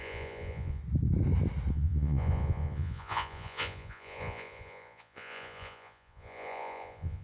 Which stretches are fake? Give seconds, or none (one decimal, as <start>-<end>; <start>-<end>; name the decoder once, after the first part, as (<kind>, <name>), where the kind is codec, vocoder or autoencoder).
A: 0.0-0.8 (vocoder, Vocos); 1.7-7.2